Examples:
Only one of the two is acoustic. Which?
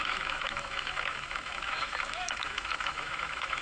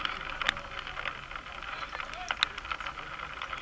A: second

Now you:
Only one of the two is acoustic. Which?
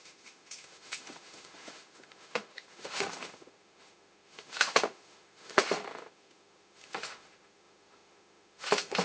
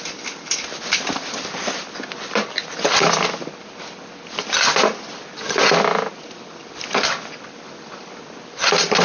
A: second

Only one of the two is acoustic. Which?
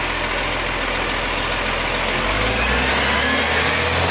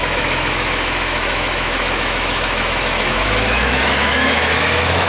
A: first